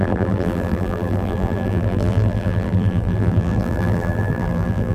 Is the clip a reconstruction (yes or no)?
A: yes